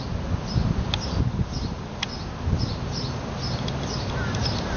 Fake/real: real